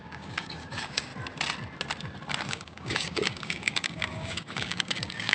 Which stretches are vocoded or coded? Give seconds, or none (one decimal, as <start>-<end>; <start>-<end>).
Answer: 0.0-1.1; 2.5-5.3